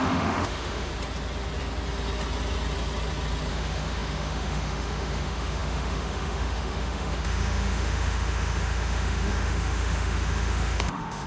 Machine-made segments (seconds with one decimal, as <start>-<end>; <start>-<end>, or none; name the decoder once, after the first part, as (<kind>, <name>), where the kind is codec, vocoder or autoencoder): 0.0-0.9 (autoencoder, DAC-VAE); 3.5-11.3